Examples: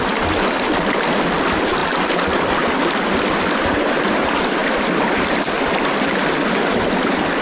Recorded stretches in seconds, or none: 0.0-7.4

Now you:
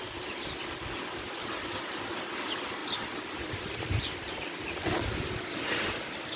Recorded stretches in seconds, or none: 0.0-6.4

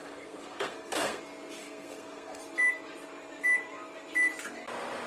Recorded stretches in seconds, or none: 1.2-1.6; 2.4-5.1

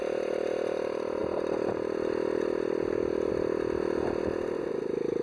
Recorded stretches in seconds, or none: 0.0-5.2

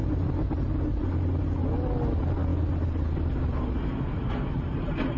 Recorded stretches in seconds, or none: 0.0-5.2

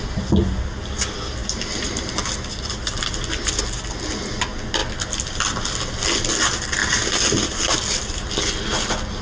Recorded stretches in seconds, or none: 0.0-1.4; 3.5-6.8; 8.3-9.2